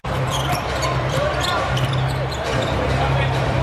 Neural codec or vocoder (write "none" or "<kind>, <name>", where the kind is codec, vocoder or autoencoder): vocoder, BigVGAN v2